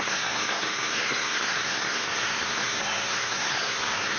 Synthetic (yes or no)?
yes